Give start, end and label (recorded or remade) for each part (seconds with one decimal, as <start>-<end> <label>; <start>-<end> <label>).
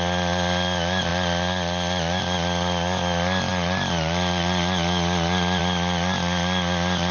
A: 0.0-7.1 recorded